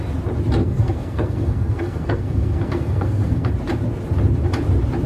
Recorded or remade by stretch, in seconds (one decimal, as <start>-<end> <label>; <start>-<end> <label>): 0.0-0.6 recorded; 0.6-3.5 remade; 3.5-5.1 recorded